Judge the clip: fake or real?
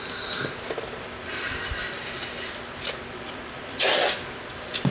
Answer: real